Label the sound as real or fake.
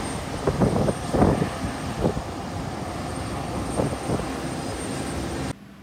real